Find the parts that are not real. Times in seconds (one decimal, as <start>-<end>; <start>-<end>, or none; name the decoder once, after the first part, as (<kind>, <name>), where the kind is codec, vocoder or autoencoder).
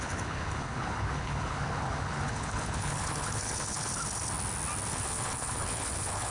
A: 0.0-3.9 (codec, HILCodec); 4.9-6.3